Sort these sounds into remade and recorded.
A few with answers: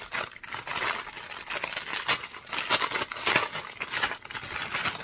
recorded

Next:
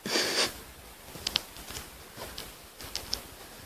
recorded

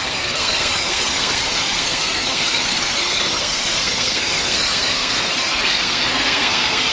remade